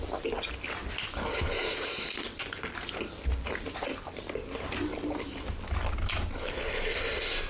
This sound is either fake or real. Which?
real